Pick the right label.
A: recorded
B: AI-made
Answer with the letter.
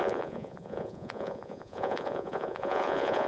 B